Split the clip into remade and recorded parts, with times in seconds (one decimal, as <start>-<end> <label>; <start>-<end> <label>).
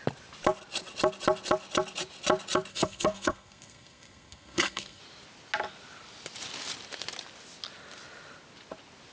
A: 0.0-2.7 recorded; 2.7-5.0 remade; 5.0-9.1 recorded